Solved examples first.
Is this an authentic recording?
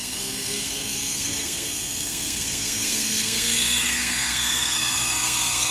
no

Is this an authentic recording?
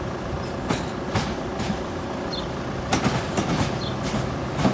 yes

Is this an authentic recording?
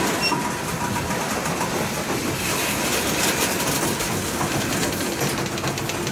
yes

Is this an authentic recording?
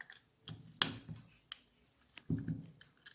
yes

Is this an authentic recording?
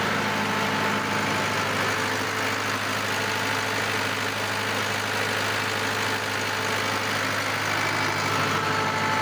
yes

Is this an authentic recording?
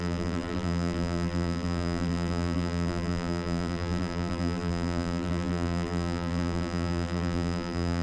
no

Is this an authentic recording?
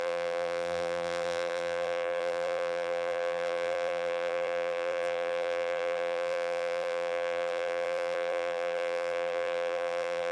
no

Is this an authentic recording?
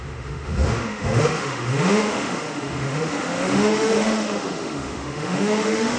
no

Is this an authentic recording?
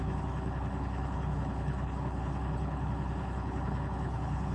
no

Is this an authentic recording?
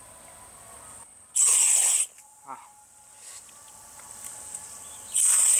yes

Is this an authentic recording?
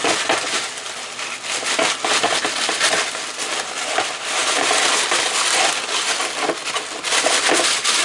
yes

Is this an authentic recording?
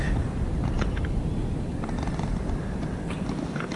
yes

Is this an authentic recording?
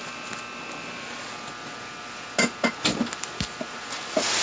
yes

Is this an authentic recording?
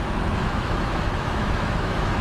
no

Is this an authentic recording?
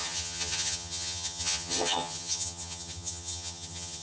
no